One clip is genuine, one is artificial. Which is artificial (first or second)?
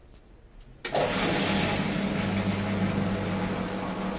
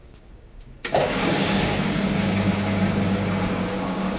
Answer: second